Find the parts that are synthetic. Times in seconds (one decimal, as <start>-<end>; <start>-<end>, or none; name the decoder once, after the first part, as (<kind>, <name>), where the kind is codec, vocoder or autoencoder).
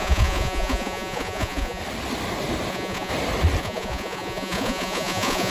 0.0-1.8 (vocoder, Vocos); 2.7-3.1; 3.6-5.5